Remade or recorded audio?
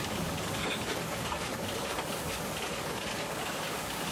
remade